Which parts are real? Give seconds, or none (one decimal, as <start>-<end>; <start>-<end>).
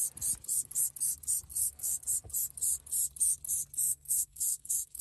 0.0-1.5; 2.0-3.9